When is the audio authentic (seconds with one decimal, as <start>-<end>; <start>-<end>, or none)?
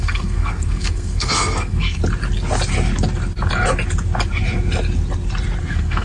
2.0-5.6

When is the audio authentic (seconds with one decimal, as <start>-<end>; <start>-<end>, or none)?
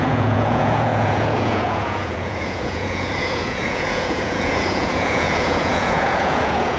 none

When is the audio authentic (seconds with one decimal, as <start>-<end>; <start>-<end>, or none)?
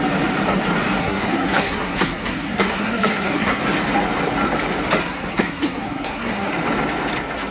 0.0-1.0; 3.6-5.0; 6.5-7.5